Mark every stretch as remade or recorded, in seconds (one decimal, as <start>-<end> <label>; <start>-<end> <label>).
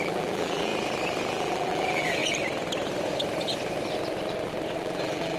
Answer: 0.0-0.7 remade; 0.7-1.3 recorded; 1.3-2.2 remade; 2.2-4.8 recorded; 4.8-5.4 remade